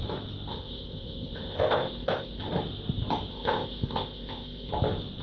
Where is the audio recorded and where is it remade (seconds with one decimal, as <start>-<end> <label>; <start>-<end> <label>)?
0.0-0.5 recorded; 0.5-2.4 remade; 2.4-3.3 recorded; 3.3-4.7 remade; 4.7-5.2 recorded